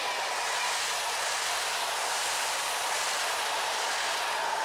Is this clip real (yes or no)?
yes